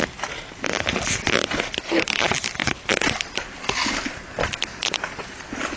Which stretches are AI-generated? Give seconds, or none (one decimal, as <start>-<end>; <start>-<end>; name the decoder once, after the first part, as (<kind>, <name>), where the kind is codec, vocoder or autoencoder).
2.6-5.8 (vocoder, BigVGAN v2)